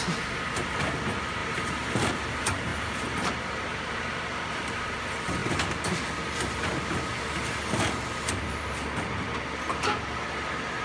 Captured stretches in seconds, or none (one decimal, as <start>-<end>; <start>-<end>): 0.0-1.4; 2.1-2.7; 4.4-10.8